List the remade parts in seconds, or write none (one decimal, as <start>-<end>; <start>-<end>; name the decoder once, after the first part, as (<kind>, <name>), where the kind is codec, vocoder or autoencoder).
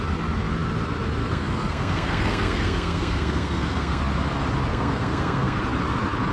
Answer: 1.2-4.0 (codec, SNAC); 4.7-5.6